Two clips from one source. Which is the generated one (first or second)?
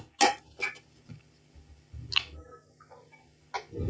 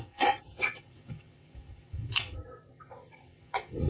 second